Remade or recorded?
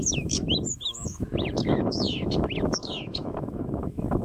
remade